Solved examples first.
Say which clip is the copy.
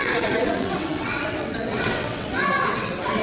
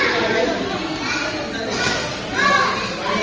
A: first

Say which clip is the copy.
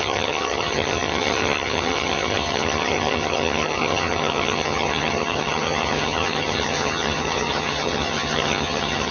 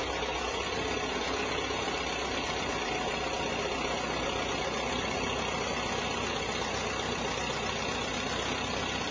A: first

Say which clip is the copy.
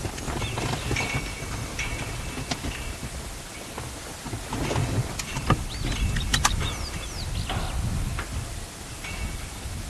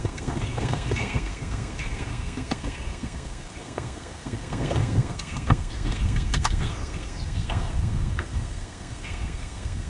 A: second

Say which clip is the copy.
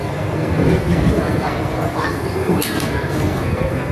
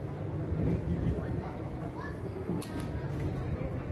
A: first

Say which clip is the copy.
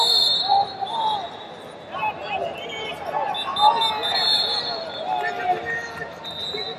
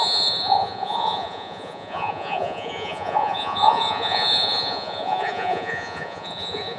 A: second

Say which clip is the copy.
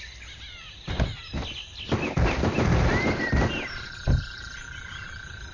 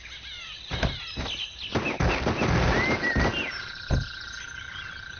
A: first